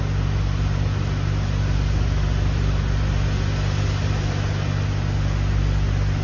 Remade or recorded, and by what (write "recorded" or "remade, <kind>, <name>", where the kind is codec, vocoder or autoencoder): recorded